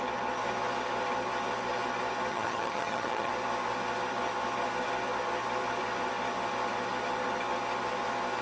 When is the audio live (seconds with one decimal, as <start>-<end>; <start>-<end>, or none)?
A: 0.0-2.3; 3.3-8.4